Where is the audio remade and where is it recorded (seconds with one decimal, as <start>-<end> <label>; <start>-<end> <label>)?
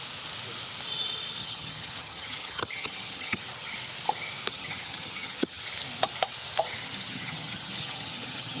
0.0-1.4 recorded; 1.4-3.4 remade; 3.4-4.5 recorded; 4.5-5.6 remade; 5.6-6.8 recorded; 6.8-8.6 remade